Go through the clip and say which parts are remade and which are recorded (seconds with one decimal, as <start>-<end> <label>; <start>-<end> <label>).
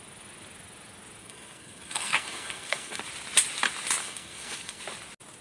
0.0-1.2 recorded; 1.2-3.1 remade; 3.1-4.0 recorded; 4.0-4.8 remade; 4.8-5.4 recorded